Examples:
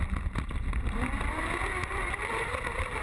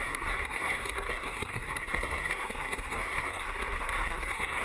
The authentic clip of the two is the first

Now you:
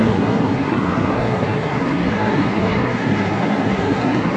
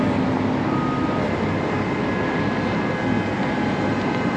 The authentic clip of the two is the second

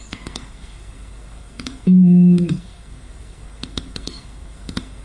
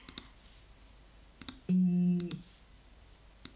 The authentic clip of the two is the second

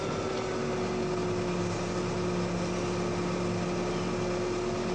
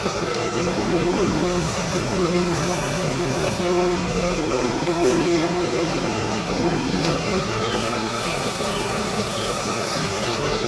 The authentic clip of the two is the first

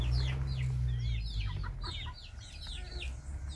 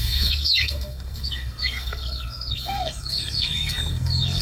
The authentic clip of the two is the first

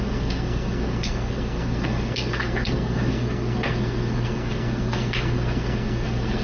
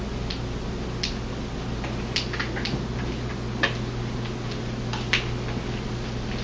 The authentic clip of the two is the second